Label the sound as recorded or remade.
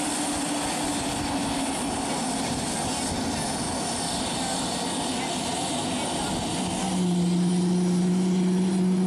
recorded